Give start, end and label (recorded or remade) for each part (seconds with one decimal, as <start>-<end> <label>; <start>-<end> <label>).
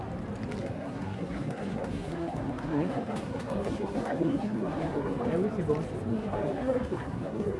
0.0-0.6 recorded; 0.6-5.2 remade; 5.2-6.1 recorded; 6.1-7.6 remade